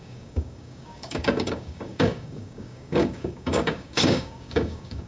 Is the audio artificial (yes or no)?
yes